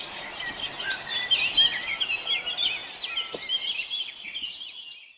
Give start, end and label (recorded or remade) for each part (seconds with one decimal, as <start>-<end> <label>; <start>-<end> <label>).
0.0-5.2 recorded